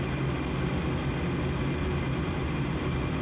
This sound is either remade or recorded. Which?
recorded